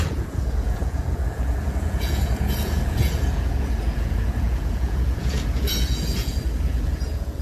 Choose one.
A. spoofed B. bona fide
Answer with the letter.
A